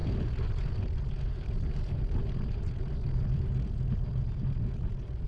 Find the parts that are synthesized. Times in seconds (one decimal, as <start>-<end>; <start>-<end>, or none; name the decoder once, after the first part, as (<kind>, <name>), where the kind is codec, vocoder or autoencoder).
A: none